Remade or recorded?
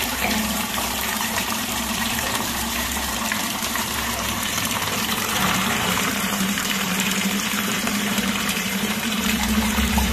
remade